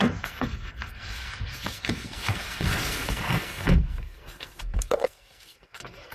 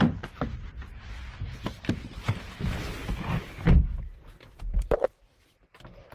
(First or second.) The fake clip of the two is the first